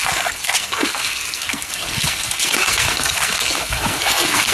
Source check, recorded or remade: remade